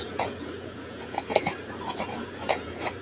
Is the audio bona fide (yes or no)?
no